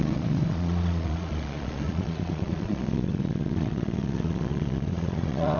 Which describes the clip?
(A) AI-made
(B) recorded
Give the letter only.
A